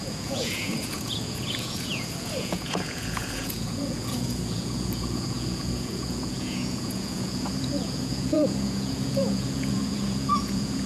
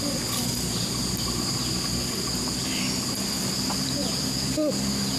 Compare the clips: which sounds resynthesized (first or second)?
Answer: first